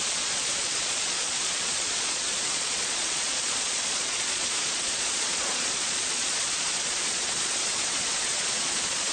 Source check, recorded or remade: remade